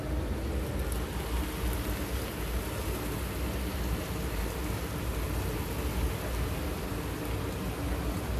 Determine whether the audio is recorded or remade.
recorded